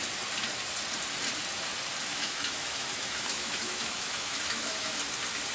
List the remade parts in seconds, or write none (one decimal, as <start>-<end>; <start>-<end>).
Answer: 2.1-5.0